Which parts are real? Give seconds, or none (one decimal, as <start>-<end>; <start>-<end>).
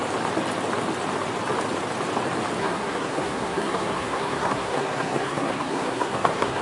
0.0-2.6